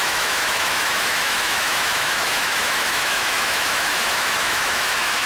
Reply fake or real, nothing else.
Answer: fake